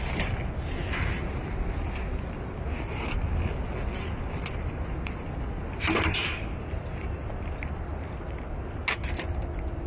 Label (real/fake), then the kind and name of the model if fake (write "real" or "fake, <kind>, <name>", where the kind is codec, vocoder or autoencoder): real